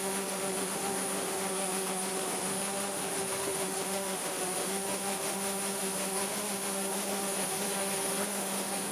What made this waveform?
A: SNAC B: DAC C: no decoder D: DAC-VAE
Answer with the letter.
D